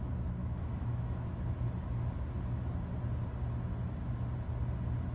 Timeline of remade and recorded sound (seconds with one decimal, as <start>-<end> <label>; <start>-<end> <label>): 0.0-0.4 recorded; 0.4-1.5 remade; 1.5-5.1 recorded

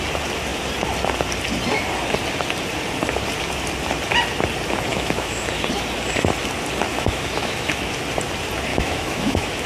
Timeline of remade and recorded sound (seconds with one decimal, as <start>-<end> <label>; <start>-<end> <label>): 0.0-4.9 recorded; 4.9-5.5 remade; 5.5-6.9 recorded; 6.9-7.9 remade; 7.9-8.7 recorded; 8.7-9.7 remade

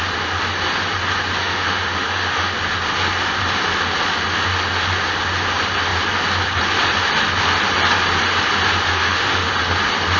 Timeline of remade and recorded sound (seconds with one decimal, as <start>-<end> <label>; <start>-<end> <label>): 0.0-1.4 recorded; 1.4-2.5 remade; 2.5-8.9 recorded; 8.9-9.5 remade; 9.5-10.2 recorded